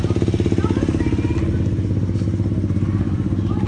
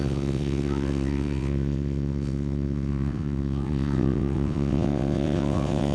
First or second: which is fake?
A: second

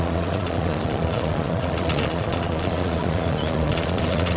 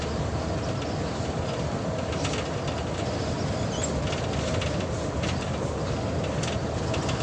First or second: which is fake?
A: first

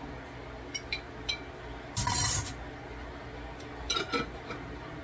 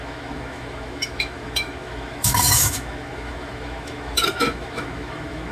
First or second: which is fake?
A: second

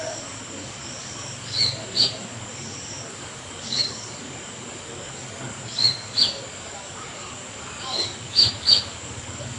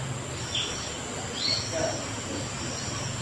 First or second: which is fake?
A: first